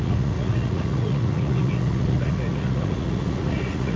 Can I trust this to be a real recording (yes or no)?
no